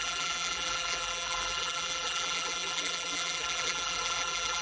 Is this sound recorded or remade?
remade